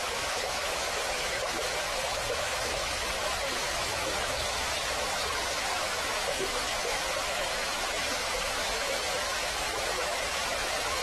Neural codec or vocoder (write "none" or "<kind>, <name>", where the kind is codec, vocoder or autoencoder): autoencoder, DAC-VAE